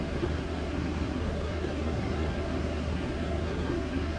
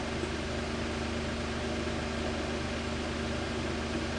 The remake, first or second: first